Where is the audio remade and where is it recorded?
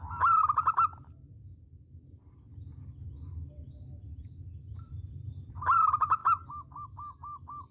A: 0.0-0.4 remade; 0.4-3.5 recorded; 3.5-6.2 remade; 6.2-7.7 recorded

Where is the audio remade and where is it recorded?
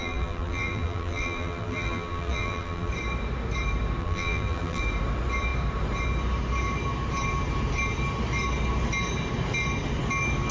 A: 0.0-2.9 remade; 2.9-4.0 recorded; 4.0-4.8 remade; 4.8-10.5 recorded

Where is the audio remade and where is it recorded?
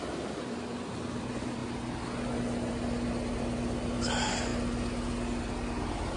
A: 0.0-6.2 recorded